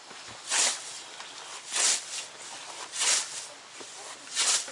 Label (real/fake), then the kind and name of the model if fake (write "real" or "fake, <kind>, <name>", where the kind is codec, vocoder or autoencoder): real